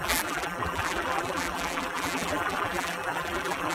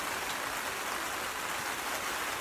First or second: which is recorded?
second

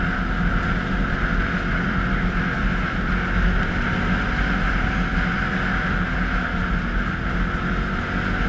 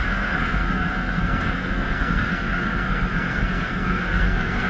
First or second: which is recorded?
first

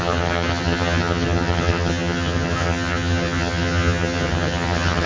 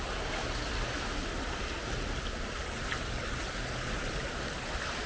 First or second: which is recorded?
second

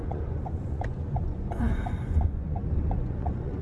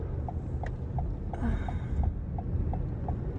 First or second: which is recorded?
second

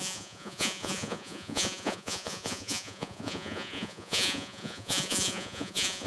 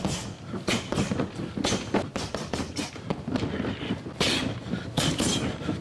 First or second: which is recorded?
second